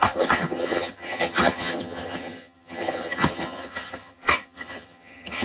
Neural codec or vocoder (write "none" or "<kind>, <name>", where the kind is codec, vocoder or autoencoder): vocoder, HiFi-GAN